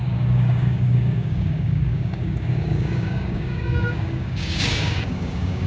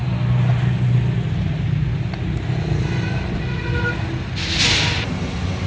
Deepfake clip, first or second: first